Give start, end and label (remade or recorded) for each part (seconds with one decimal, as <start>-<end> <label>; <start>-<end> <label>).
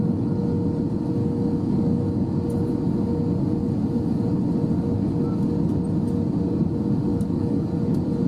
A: 0.0-1.2 recorded; 1.2-2.0 remade; 2.0-7.1 recorded; 7.1-7.7 remade; 7.7-8.3 recorded